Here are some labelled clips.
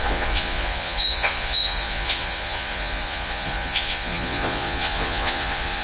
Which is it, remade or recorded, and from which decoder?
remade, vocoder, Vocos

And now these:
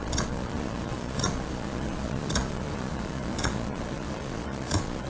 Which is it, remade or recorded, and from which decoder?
remade, vocoder, Vocos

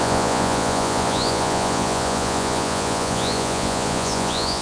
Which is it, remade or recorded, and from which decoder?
remade, vocoder, Vocos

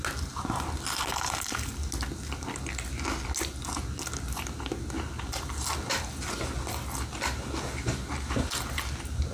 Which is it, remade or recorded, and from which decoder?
recorded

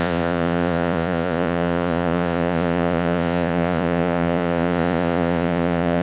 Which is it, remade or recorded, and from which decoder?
remade, vocoder, Vocos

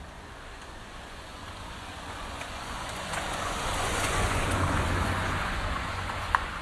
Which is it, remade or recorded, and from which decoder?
remade, vocoder, Vocos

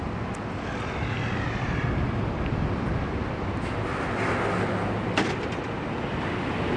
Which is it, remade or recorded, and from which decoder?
recorded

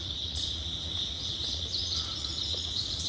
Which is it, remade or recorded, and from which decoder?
remade, vocoder, Vocos